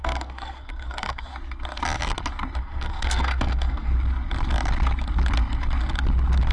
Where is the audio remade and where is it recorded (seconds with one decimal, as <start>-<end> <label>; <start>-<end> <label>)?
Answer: 0.0-1.3 remade; 1.3-2.6 recorded; 2.6-3.9 remade; 3.9-6.5 recorded